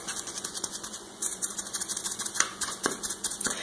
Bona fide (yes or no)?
no